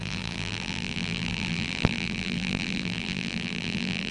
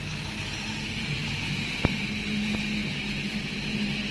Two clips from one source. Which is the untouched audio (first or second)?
second